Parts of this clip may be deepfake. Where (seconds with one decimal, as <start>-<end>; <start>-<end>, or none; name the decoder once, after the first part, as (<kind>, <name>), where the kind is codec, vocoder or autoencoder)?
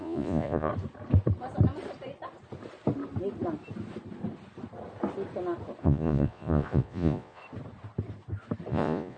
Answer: 0.0-0.7 (vocoder, Vocos); 5.8-7.4; 8.7-9.2